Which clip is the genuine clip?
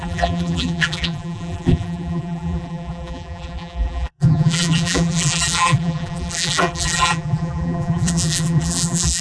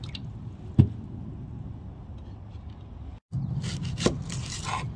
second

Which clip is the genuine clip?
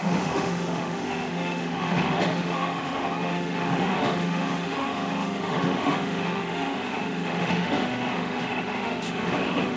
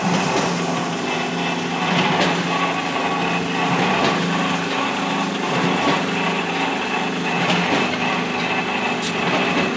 second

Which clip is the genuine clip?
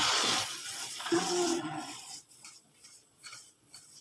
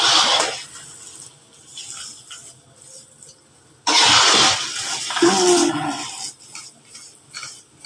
second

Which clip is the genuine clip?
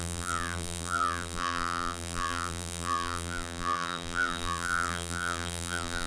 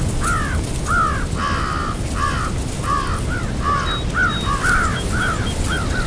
second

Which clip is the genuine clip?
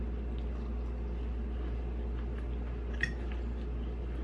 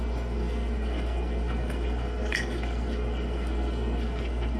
first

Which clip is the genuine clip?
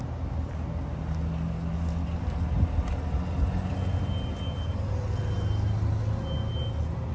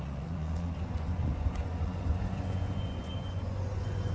first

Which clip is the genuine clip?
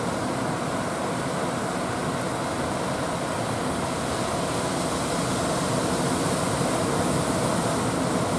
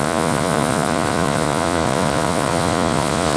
first